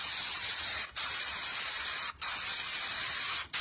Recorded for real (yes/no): yes